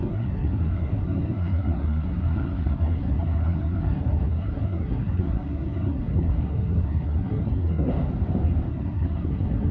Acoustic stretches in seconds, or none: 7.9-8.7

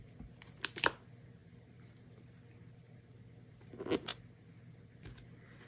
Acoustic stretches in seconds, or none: 0.0-5.7

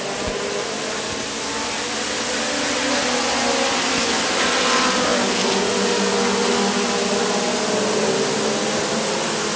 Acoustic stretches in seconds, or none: 0.0-9.6

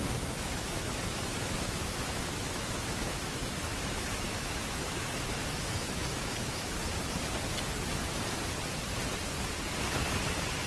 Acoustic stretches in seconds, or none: 6.8-10.7

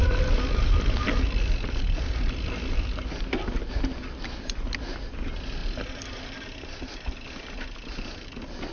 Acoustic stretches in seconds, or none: 0.0-8.7

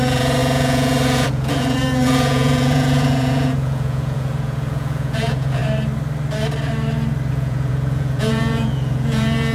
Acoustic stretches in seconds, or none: 5.6-7.3